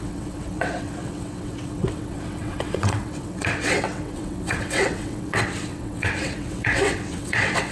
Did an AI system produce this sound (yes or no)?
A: yes